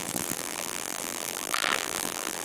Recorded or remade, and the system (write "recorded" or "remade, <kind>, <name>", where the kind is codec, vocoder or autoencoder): remade, vocoder, BigVGAN v2